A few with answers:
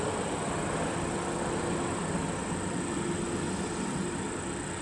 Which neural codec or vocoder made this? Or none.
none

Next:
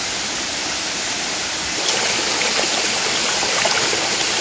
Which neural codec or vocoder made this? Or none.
none